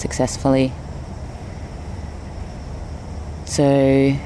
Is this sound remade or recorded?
recorded